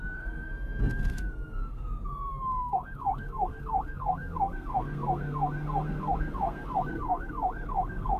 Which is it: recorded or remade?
remade